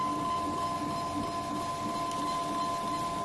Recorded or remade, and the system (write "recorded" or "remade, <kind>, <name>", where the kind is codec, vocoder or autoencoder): recorded